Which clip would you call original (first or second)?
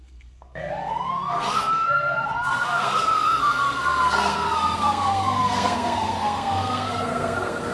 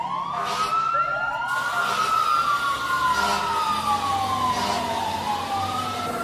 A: second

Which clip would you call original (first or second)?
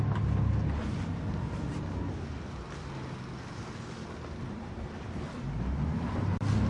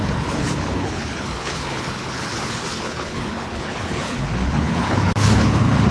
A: first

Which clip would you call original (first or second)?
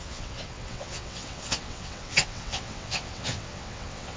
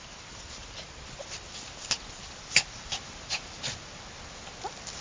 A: second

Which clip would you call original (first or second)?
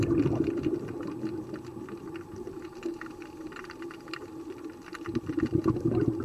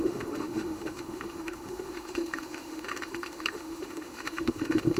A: first